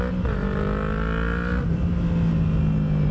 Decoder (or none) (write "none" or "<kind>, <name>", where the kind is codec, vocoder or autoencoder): none